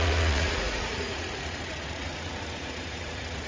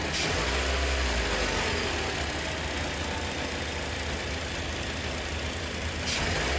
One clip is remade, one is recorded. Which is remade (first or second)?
first